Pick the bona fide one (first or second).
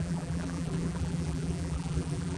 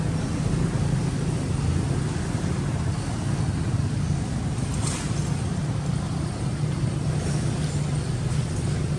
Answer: second